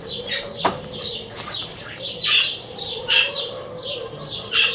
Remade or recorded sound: remade